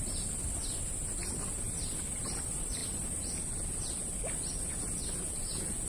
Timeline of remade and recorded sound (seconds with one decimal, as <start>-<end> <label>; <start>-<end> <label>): 0.0-5.9 recorded